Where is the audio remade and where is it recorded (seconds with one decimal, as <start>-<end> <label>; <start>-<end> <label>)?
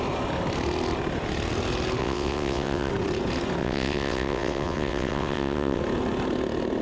0.0-2.0 recorded; 2.0-2.9 remade; 2.9-3.6 recorded; 3.6-5.8 remade; 5.8-6.8 recorded